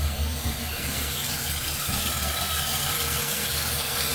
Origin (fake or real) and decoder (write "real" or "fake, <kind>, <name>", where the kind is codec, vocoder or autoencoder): fake, codec, SNAC